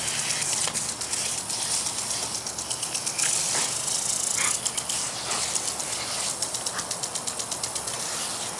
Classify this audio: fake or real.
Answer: real